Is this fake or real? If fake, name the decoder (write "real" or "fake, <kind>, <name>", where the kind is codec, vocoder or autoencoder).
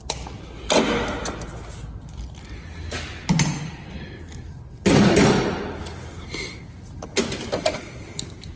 real